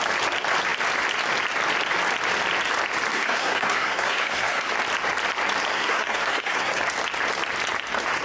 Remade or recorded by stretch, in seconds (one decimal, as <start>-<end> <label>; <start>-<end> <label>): 0.0-3.1 recorded; 3.1-4.7 remade; 4.7-5.7 recorded; 5.7-6.8 remade; 6.8-8.2 recorded